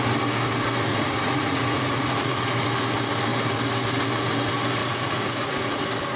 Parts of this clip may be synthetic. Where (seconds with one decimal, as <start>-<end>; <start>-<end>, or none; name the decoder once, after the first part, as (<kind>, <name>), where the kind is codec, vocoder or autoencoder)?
0.9-2.5 (vocoder, Vocos); 4.8-5.8